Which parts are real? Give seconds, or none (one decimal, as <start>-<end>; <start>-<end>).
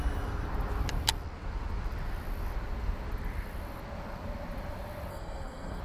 0.0-5.1